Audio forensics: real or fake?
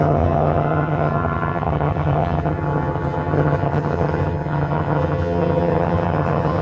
fake